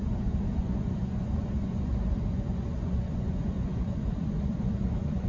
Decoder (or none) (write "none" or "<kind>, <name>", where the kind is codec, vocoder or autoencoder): vocoder, Vocos